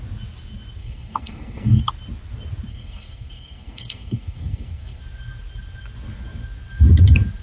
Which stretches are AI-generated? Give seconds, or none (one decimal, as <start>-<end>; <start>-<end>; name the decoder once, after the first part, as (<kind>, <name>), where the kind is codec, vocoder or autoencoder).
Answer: 0.8-1.8 (codec, SNAC); 2.7-5.0